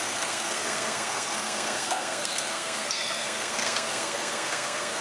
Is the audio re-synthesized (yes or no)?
yes